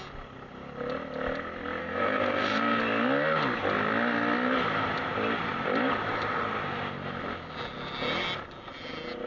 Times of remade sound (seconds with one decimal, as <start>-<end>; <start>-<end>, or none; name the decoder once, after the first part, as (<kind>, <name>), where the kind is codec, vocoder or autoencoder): 1.8-2.8 (codec, SNAC)